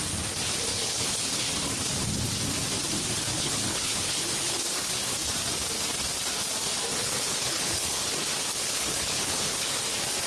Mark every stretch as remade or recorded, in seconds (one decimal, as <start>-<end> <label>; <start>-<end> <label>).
0.0-0.7 recorded; 0.7-1.5 remade; 1.5-3.3 recorded; 3.3-4.6 remade; 4.6-6.9 recorded; 6.9-8.0 remade; 8.0-8.5 recorded; 8.5-9.7 remade; 9.7-10.3 recorded